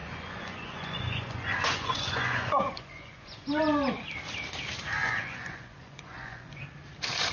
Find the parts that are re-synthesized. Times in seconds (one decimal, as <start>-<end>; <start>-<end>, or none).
0.0-3.6; 5.0-6.6